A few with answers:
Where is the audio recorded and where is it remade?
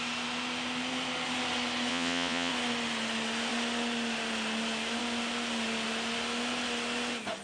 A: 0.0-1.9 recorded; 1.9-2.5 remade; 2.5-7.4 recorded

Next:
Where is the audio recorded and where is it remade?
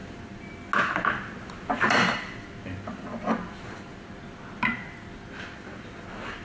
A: 0.0-6.4 recorded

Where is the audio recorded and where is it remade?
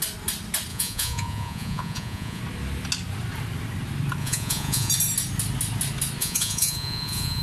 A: 0.0-0.7 recorded; 0.7-2.4 remade; 2.4-4.2 recorded; 4.2-4.9 remade; 4.9-6.2 recorded; 6.2-7.4 remade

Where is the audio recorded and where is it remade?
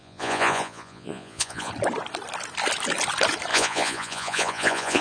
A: 0.0-1.7 remade; 1.7-3.5 recorded; 3.5-5.0 remade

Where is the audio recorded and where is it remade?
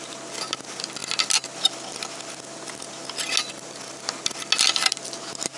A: 0.0-5.6 recorded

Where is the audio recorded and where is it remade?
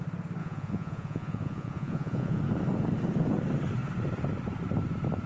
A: 0.0-0.4 recorded; 0.4-2.4 remade; 2.4-5.3 recorded